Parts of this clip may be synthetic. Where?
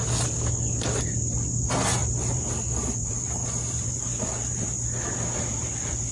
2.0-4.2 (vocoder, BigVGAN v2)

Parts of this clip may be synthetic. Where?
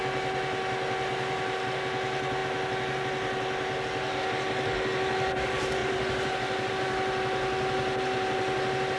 none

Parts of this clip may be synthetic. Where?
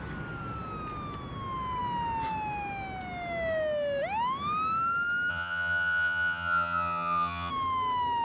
5.3-7.5 (vocoder, HiFi-GAN)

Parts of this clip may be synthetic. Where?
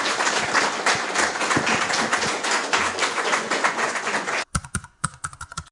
2.1-5.7 (vocoder, Vocos)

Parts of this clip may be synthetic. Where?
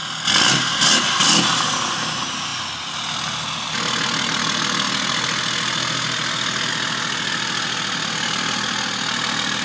none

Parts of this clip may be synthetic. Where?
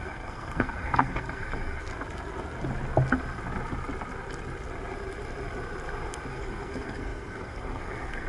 0.0-1.9 (codec, SNAC); 6.3-8.3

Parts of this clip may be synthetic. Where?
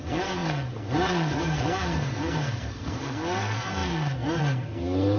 0.0-5.2 (codec, SNAC)